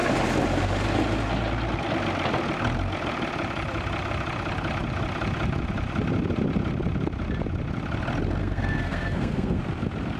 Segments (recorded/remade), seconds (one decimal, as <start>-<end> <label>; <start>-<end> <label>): 0.0-8.4 recorded; 8.4-9.6 remade; 9.6-10.2 recorded